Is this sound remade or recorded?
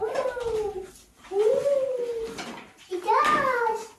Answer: recorded